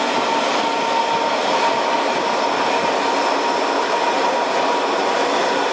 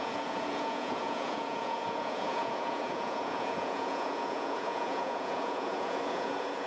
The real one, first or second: first